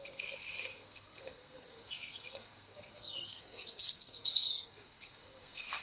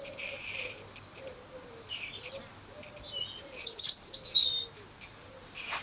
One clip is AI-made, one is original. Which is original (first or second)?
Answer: second